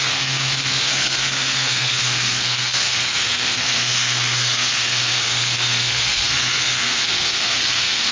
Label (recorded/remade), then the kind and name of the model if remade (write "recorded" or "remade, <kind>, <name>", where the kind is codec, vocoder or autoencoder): remade, codec, SNAC